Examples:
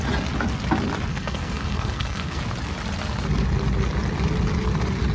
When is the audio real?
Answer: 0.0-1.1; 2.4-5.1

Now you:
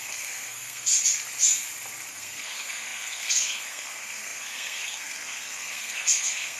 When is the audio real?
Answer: 0.9-2.1

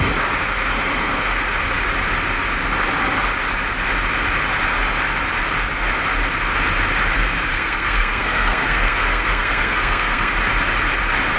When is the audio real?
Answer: 0.0-7.5; 10.3-11.4

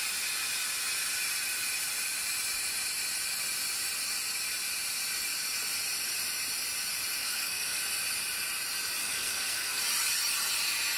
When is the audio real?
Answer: 0.0-7.2; 7.8-9.0; 9.8-11.0

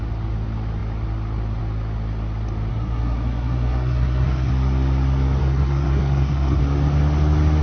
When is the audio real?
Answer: 0.0-2.7; 4.5-5.4; 6.6-7.6

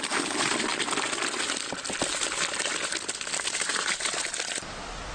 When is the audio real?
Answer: 0.0-5.1